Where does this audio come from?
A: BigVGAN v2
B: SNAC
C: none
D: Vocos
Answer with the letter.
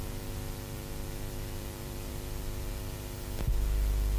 A